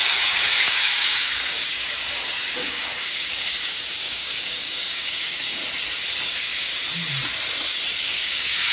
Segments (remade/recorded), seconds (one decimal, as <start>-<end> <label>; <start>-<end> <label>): 0.0-5.6 remade; 5.6-6.3 recorded; 6.3-6.7 remade; 6.7-8.0 recorded; 8.0-8.7 remade